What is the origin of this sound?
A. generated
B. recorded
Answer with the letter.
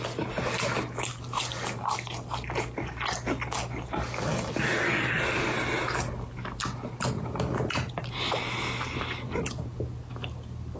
B